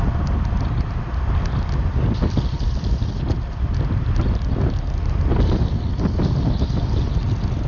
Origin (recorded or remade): recorded